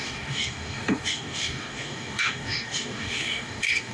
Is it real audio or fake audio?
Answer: fake